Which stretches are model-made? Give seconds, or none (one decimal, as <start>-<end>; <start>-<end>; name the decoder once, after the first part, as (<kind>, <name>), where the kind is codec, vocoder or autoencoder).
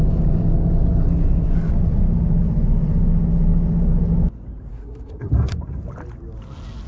4.7-5.3 (codec, SNAC)